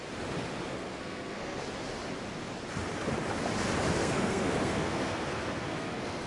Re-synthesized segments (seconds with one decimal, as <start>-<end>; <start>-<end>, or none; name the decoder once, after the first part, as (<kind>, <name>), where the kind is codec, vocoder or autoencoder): 0.7-1.6 (codec, SNAC); 4.0-6.3